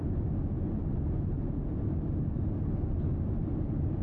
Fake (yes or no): no